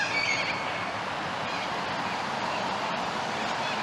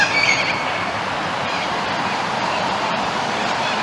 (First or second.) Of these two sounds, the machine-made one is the second